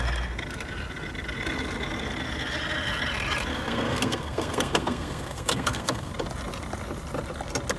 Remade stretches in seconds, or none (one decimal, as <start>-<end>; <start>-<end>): 3.5-6.1